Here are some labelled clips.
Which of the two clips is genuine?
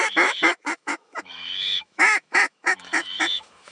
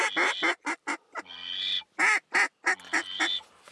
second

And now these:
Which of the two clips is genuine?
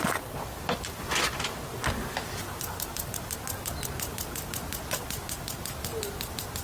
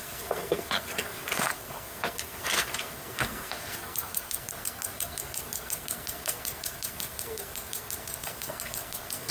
first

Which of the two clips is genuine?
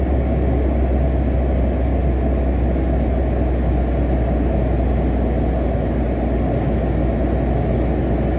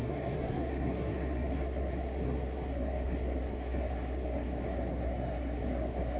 first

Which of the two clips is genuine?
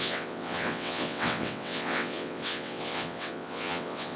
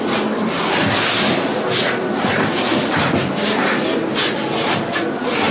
second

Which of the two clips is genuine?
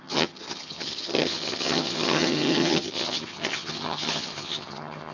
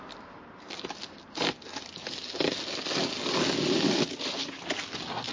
second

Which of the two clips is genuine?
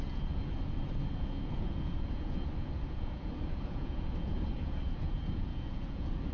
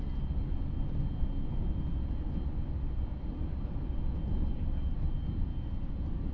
second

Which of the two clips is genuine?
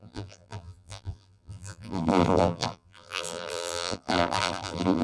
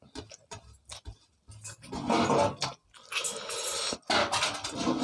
second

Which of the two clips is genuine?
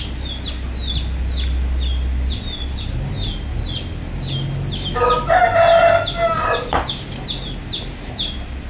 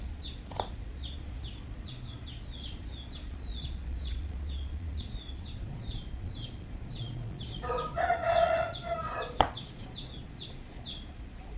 first